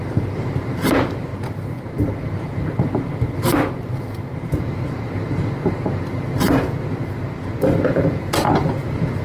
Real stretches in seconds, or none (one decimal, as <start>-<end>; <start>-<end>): 3.5-4.1